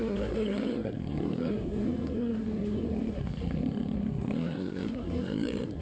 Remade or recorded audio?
remade